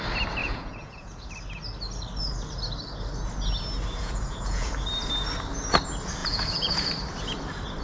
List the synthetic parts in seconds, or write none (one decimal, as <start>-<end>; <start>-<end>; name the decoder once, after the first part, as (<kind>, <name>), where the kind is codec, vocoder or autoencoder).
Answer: 0.4-1.3 (vocoder, Vocos); 4.0-4.7; 6.2-6.9